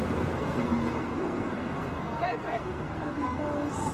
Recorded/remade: remade